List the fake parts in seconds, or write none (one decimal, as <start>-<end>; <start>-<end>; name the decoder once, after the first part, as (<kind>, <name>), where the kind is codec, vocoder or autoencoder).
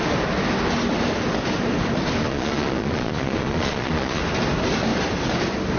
2.2-4.2 (vocoder, Vocos)